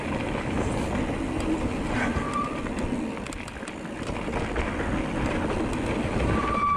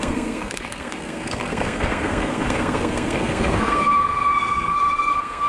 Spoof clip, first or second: second